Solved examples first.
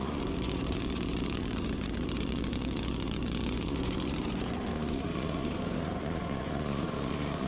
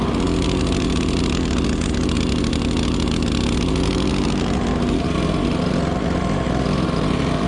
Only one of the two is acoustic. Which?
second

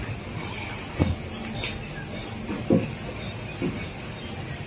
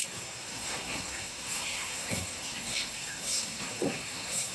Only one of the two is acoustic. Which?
first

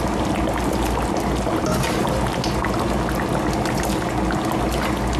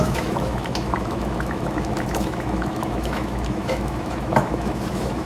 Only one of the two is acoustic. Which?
first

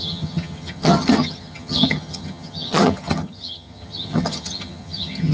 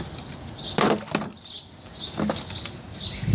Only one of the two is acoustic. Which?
second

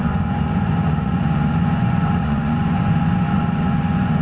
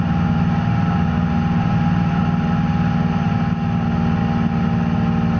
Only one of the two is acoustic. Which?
second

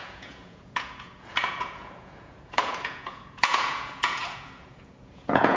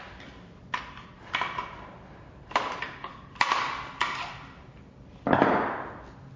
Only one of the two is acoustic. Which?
second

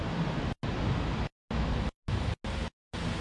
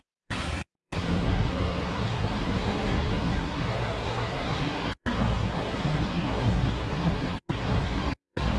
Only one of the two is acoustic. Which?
first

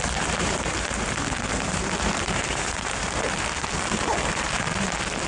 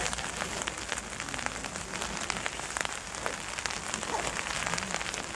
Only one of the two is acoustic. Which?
second